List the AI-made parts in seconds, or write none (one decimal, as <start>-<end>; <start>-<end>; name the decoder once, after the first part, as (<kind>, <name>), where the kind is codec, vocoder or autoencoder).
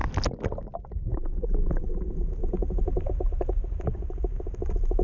none